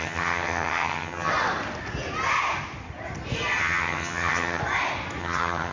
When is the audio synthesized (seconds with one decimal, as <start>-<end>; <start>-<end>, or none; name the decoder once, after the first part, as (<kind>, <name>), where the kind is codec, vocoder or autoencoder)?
0.0-1.3 (vocoder, HiFi-GAN); 3.6-4.6; 5.2-5.7